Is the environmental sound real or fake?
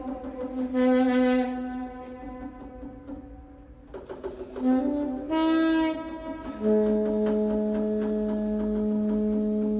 real